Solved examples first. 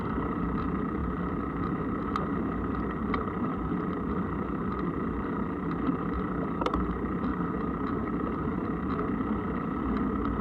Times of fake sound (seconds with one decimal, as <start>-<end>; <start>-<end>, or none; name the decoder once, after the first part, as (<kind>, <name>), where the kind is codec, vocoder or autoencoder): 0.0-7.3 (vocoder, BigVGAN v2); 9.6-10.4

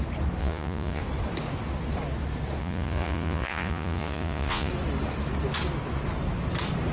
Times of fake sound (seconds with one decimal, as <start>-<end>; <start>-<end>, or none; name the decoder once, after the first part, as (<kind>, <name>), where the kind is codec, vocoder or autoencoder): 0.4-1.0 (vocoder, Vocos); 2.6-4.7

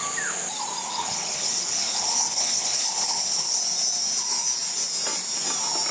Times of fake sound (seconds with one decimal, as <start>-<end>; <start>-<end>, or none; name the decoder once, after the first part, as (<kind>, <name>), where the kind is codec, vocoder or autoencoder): 0.9-3.6 (codec, HILCodec)

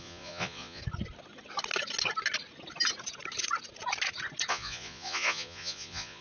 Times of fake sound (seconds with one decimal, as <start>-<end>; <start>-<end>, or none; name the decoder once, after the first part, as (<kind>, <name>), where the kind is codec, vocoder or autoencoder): 0.0-0.8 (vocoder, Vocos); 4.5-6.2

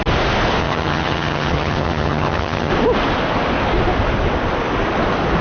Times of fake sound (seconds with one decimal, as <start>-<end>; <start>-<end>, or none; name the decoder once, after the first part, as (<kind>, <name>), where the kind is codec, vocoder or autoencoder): 0.6-2.7 (vocoder, HiFi-GAN)